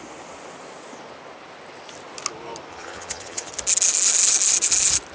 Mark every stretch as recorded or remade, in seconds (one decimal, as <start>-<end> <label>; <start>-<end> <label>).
0.0-2.7 recorded; 2.7-3.5 remade; 3.5-5.1 recorded